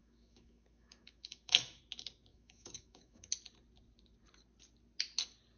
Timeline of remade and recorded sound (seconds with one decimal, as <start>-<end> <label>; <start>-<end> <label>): 0.0-1.8 remade; 1.8-2.3 recorded; 2.3-3.3 remade; 3.3-5.6 recorded